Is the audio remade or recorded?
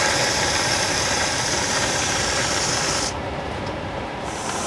remade